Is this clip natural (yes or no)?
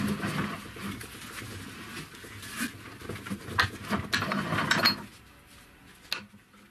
yes